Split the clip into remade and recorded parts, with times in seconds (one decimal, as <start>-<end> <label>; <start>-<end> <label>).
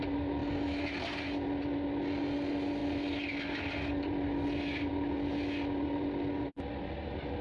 0.0-7.4 recorded